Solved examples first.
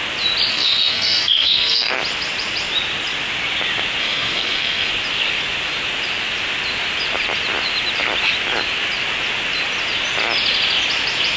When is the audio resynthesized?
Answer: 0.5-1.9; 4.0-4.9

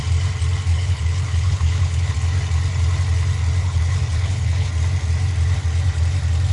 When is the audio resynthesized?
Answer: 0.7-2.1; 3.6-4.7

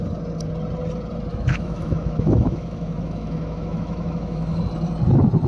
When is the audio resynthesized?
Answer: 1.3-4.6

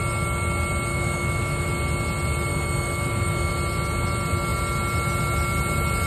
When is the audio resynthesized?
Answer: 0.9-1.7; 2.5-3.5

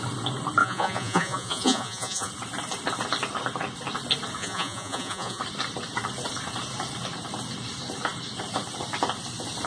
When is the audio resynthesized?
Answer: 0.6-2.3; 4.4-5.4